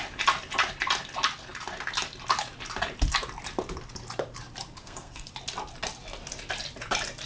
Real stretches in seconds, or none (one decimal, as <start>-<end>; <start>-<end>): 0.0-4.8; 5.3-7.3